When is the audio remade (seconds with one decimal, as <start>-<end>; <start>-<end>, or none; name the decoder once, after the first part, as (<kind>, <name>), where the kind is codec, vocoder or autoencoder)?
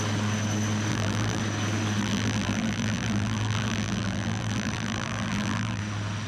0.9-1.4 (vocoder, BigVGAN v2); 2.0-5.8